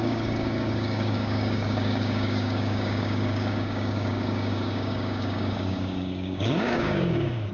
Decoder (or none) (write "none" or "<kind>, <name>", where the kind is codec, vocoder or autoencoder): codec, DAC